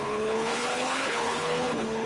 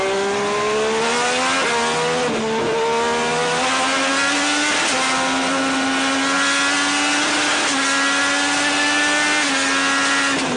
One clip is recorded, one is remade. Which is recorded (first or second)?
second